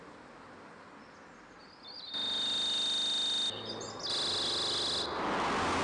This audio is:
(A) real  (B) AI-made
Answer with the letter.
A